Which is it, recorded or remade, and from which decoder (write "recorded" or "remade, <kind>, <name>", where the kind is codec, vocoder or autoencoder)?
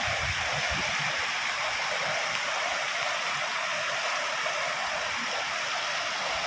recorded